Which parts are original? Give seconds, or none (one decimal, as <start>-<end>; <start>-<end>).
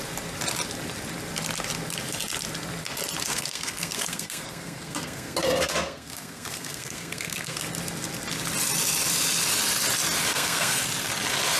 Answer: 0.0-3.3; 7.6-10.3; 10.8-11.6